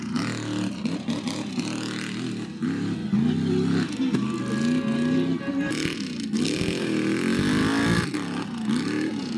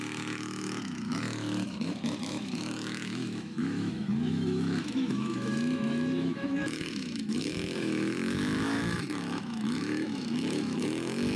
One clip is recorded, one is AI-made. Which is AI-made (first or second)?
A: second